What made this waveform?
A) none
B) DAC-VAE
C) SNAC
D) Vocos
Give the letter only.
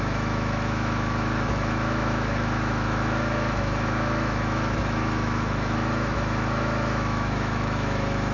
B